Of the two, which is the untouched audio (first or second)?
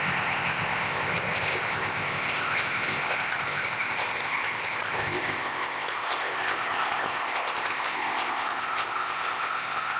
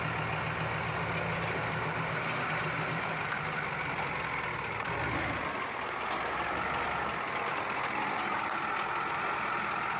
second